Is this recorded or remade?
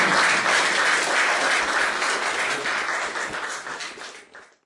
recorded